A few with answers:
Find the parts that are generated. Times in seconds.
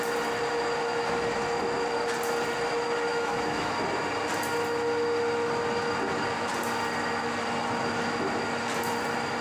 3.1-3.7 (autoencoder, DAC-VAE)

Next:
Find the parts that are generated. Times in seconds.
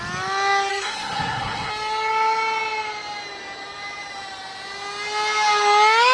0.7-1.7 (codec, SNAC)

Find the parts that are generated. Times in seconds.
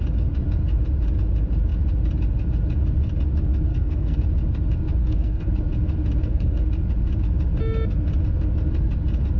3.7-4.2 (codec, SNAC); 5.0-5.5; 6.2-6.7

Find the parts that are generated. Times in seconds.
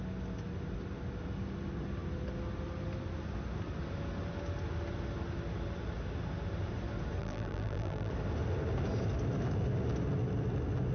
7.2-8.1 (vocoder, BigVGAN v2)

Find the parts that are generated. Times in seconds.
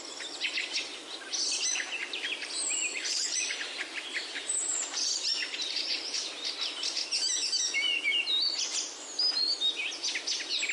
2.0-6.3 (vocoder, BigVGAN v2)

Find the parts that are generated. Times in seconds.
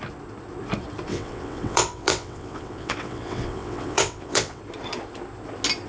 1.1-4.6 (vocoder, WaveNeXt)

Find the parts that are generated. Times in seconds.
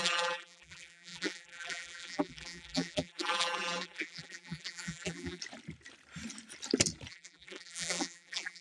0.0-5.4 (vocoder, BigVGAN v2); 7.1-8.6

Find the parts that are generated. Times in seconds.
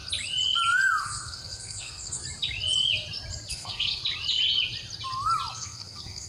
1.0-2.2 (codec, SNAC); 3.5-4.0; 5.5-6.3